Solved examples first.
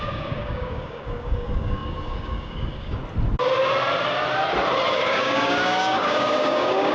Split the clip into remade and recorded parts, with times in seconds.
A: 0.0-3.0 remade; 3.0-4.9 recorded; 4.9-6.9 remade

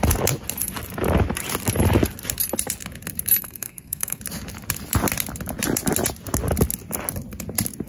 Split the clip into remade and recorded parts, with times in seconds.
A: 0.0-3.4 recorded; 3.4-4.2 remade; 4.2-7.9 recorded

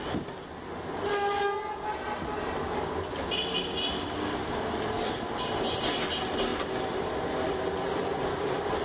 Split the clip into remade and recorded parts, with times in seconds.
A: 0.0-8.8 recorded

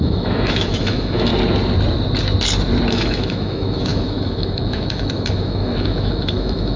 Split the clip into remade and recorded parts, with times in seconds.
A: 0.0-1.3 remade; 1.3-2.9 recorded; 2.9-6.8 remade

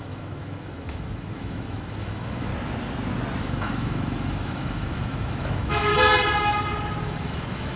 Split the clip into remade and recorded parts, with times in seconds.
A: 0.0-2.5 remade; 2.5-3.4 recorded; 3.4-5.9 remade; 5.9-7.0 recorded; 7.0-7.8 remade

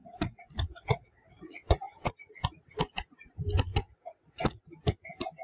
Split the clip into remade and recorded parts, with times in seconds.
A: 0.0-2.1 remade; 2.1-3.7 recorded; 3.7-4.6 remade; 4.6-5.4 recorded

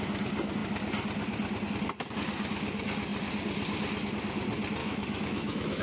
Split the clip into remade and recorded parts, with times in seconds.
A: 0.0-4.8 recorded; 4.8-5.8 remade